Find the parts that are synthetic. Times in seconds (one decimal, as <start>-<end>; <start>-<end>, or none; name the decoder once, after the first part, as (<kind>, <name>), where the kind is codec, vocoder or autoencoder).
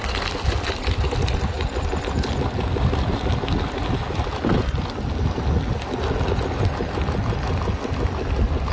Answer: none